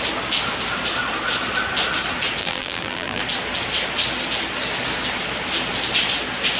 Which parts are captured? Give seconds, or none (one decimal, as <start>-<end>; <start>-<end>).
0.0-2.4; 3.2-6.6